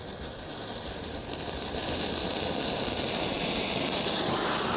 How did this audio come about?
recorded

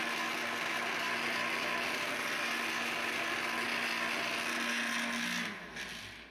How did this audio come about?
recorded